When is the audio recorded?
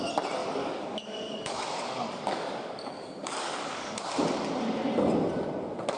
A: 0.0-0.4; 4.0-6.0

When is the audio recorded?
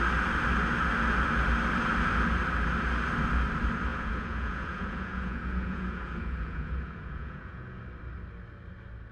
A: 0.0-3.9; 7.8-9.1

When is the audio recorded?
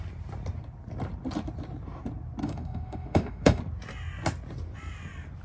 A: 0.0-2.4; 3.6-5.4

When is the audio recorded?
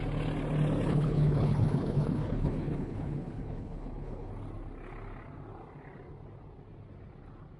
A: 0.0-0.9; 4.3-7.6